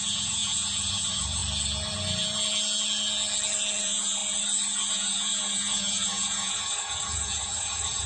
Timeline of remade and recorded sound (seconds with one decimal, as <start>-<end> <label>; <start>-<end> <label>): 0.0-1.4 remade; 1.4-3.8 recorded; 3.8-4.2 remade; 4.2-4.9 recorded; 4.9-8.1 remade